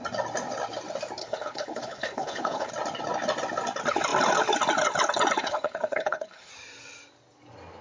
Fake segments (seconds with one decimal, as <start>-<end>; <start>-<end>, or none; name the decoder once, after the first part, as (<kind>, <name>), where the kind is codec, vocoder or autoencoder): 1.2-2.7 (codec, HILCodec); 5.4-6.5

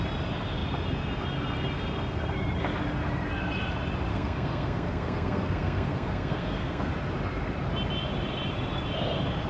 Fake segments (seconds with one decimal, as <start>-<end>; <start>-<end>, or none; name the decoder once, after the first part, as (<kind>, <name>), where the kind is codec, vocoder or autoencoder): 4.1-6.9 (codec, SNAC)

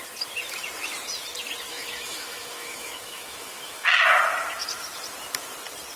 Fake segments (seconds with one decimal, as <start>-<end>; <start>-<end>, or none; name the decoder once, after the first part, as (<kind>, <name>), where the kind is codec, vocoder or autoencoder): 1.7-4.0 (autoencoder, DAC-VAE)

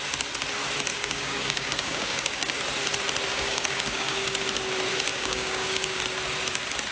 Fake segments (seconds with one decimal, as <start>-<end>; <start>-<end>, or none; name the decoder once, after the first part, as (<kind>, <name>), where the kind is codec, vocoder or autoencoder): 0.9-2.6 (codec, DAC); 3.3-4.4; 5.1-6.0